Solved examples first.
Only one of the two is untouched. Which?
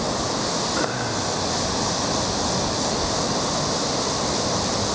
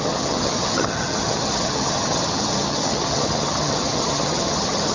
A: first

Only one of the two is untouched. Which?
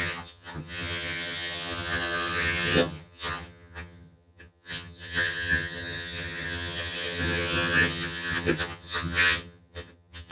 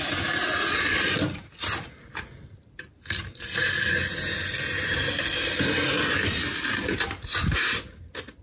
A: second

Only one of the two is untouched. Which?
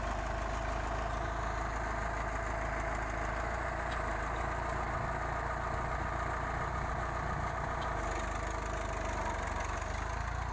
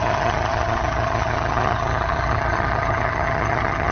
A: first